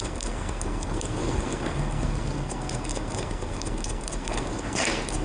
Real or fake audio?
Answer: fake